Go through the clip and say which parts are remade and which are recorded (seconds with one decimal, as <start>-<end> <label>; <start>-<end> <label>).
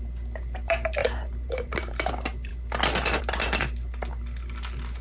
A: 0.0-1.0 recorded; 1.0-2.1 remade; 2.1-5.0 recorded